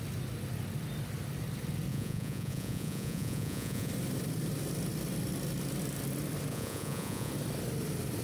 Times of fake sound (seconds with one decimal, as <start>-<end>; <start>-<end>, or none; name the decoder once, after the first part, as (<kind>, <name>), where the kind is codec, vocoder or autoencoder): 1.9-3.9 (vocoder, Vocos); 6.5-7.3